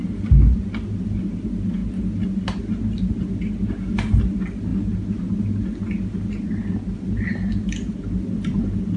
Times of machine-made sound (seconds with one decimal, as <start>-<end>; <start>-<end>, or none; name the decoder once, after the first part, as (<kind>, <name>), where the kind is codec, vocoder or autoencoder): none

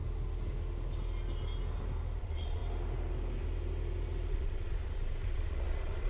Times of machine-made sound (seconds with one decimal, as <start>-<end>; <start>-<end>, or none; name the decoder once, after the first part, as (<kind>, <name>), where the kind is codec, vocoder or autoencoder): 2.2-2.6 (vocoder, Vocos); 4.3-6.1

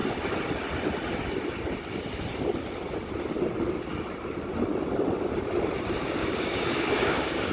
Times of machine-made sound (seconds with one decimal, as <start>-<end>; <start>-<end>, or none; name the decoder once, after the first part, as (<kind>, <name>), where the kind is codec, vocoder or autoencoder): 6.2-7.5 (codec, DAC)

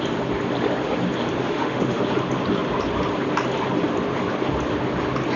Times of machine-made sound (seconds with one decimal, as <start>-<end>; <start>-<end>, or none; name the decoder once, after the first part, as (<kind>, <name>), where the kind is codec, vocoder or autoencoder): 1.4-2.0 (autoencoder, DAC-VAE)

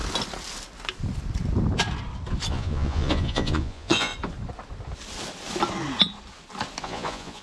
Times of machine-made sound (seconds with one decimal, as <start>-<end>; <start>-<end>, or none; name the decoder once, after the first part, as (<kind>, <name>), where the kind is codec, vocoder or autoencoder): 2.5-4.1 (vocoder, Vocos); 6.8-7.4